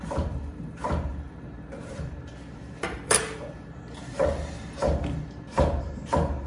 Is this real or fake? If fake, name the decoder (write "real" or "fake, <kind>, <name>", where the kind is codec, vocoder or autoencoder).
fake, vocoder, BigVGAN v2